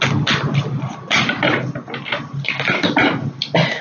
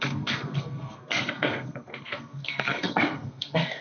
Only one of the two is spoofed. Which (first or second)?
second